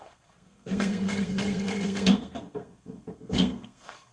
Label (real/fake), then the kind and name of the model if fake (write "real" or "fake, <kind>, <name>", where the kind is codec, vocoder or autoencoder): fake, codec, SNAC